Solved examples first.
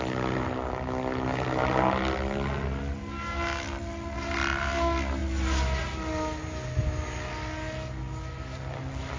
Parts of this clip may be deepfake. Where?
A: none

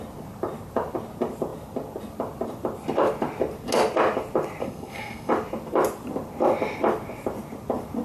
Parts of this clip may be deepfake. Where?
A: 4.6-5.3 (codec, SNAC)